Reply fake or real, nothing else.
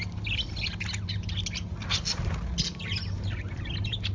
real